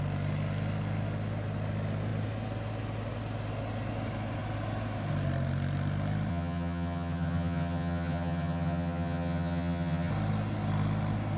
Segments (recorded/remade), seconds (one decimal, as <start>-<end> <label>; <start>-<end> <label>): 0.0-6.3 recorded; 6.3-10.1 remade; 10.1-11.4 recorded